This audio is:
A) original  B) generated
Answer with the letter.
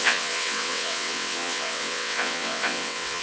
B